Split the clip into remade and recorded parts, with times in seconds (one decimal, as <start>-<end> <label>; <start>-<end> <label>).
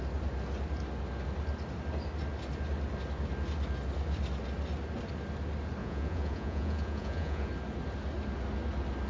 0.0-5.8 recorded; 5.8-7.5 remade; 7.5-9.1 recorded